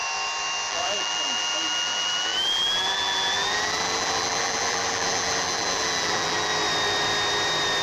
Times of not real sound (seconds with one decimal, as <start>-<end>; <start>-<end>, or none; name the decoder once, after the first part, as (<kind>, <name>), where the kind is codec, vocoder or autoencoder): 0.7-6.5 (vocoder, BigVGAN v2)